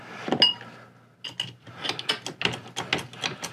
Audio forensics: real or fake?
real